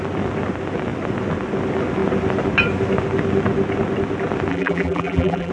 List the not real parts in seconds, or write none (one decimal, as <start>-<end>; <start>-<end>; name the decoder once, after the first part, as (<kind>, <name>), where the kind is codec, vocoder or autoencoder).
4.5-5.5 (vocoder, BigVGAN v2)